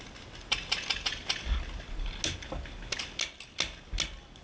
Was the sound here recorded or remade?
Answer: recorded